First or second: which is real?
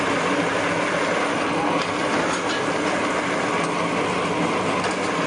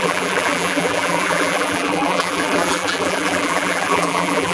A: first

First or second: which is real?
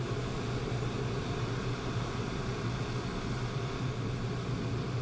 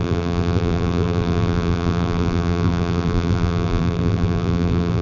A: first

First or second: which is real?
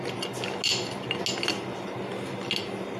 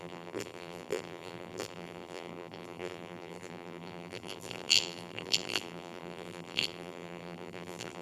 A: first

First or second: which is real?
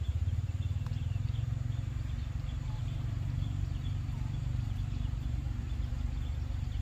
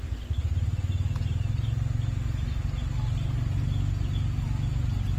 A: second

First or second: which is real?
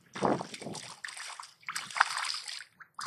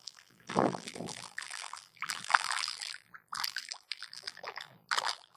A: first